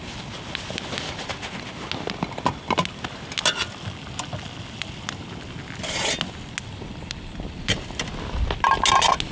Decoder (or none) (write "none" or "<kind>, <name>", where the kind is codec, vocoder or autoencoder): none